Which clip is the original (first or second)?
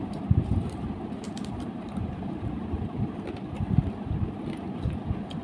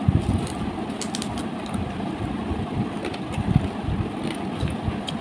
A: second